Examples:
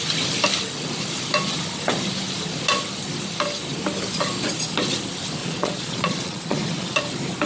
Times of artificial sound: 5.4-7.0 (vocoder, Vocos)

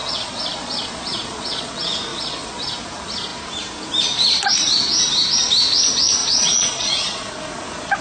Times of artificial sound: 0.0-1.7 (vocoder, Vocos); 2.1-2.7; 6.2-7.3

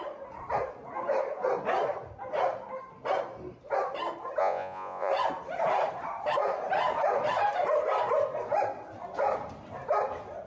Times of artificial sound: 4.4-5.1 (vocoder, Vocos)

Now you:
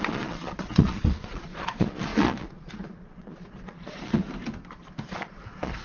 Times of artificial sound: 0.0-4.2 (vocoder, Vocos); 5.1-5.8